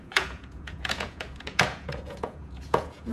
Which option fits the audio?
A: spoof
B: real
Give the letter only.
A